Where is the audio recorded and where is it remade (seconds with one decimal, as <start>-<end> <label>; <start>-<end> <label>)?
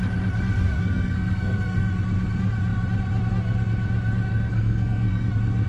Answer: 0.0-0.8 recorded; 0.8-1.9 remade; 1.9-4.3 recorded; 4.3-5.3 remade; 5.3-5.7 recorded